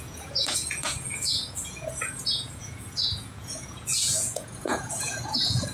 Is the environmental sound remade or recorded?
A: remade